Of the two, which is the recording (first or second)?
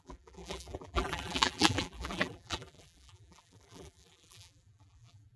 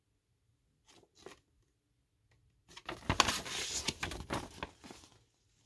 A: second